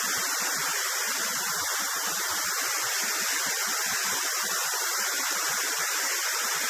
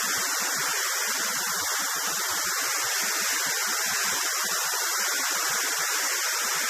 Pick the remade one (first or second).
first